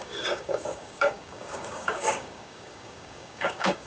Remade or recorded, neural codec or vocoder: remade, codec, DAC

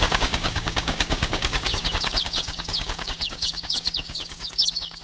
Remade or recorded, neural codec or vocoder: remade, codec, DAC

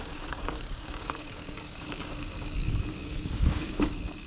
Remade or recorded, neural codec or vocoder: remade, codec, DAC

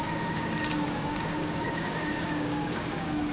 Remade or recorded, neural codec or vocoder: remade, codec, DAC